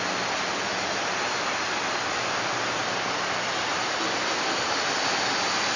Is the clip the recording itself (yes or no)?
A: yes